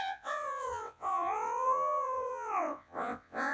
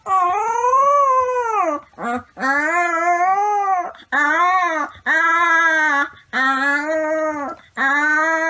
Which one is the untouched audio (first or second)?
second